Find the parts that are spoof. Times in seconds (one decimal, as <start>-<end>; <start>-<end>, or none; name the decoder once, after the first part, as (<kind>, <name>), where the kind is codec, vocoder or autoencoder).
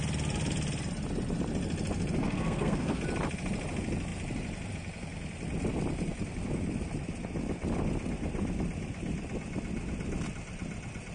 2.2-3.0 (codec, SNAC)